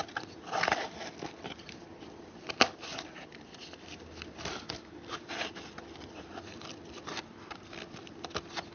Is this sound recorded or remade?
remade